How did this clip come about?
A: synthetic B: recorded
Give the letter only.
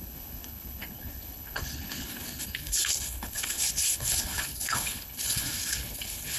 A